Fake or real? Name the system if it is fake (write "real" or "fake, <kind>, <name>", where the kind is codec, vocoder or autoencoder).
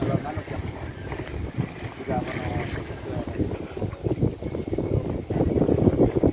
real